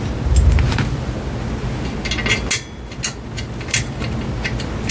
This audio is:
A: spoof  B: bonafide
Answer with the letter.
B